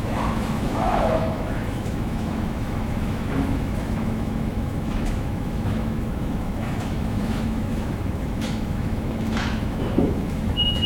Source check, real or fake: fake